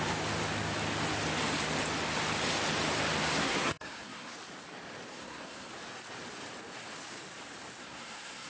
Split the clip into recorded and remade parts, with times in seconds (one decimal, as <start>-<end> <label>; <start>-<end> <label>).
0.0-3.4 recorded; 3.4-4.3 remade; 4.3-5.1 recorded; 5.1-5.7 remade; 5.7-7.8 recorded; 7.8-8.5 remade